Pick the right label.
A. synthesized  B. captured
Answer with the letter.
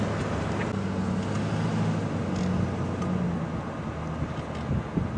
B